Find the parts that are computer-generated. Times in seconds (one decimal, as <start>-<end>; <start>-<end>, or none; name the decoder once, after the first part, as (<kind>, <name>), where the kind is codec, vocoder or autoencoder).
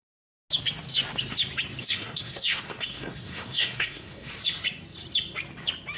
1.8-4.3 (codec, SNAC)